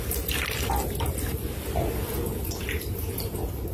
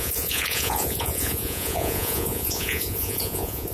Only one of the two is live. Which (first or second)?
first